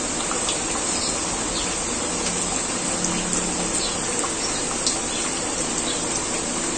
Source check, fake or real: real